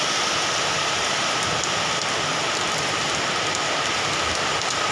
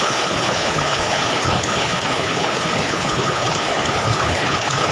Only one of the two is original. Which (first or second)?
first